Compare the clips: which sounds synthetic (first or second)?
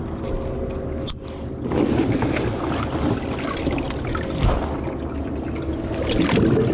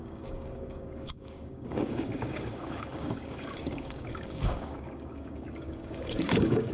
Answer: second